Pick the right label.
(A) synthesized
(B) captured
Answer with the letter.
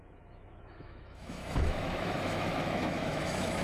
A